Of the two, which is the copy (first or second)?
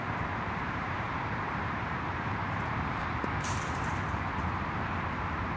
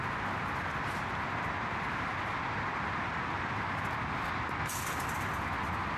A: first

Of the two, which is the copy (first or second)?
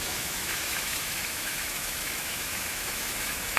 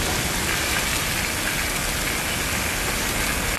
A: first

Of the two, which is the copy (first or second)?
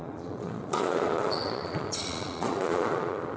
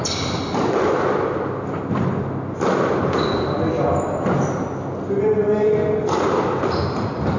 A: first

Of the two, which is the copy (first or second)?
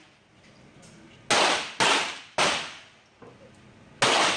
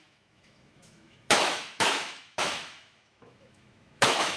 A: second